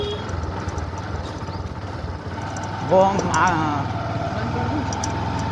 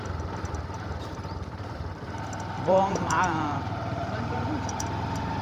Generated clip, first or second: second